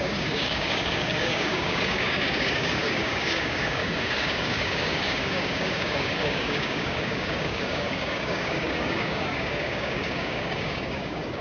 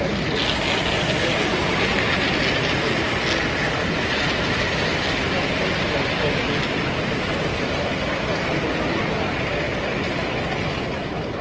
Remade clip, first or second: first